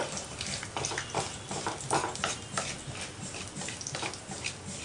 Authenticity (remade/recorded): recorded